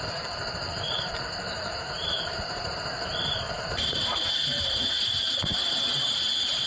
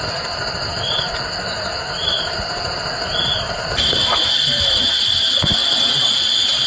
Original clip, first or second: second